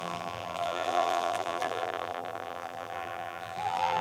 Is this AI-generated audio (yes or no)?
yes